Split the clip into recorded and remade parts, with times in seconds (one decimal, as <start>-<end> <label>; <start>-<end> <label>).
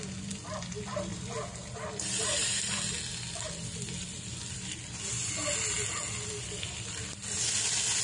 0.0-8.0 recorded